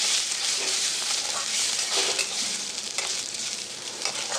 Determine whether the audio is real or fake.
fake